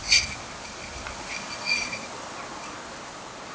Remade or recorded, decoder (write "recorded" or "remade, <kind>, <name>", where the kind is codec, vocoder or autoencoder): recorded